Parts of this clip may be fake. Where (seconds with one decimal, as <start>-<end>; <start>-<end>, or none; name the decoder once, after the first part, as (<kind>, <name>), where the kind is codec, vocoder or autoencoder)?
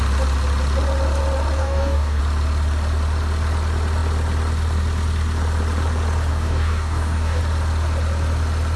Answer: 1.6-2.2 (codec, DAC); 6.3-7.4